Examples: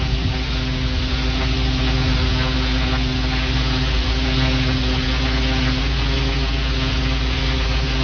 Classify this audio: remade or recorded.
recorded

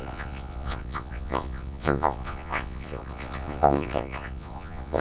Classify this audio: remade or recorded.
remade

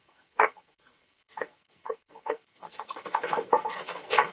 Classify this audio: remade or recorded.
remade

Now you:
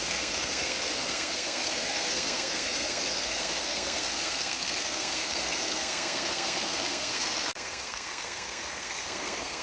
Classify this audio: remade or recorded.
remade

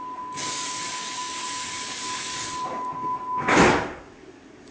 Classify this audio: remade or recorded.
remade